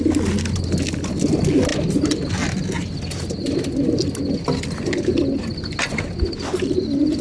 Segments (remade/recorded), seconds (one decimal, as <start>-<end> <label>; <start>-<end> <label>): 0.0-7.2 recorded